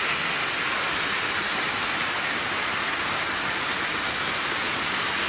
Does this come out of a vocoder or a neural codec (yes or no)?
no